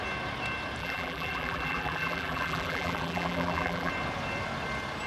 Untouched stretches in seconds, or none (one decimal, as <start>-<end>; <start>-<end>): 0.0-0.8; 3.9-5.1